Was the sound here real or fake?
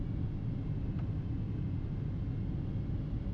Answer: real